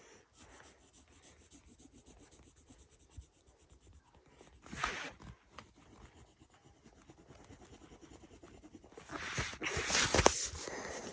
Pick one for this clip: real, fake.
real